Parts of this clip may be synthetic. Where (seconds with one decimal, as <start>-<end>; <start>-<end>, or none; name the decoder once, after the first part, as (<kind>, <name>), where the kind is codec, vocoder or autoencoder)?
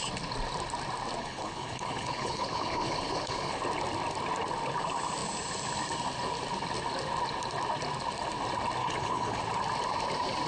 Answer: 1.2-3.6 (codec, HILCodec); 8.8-9.4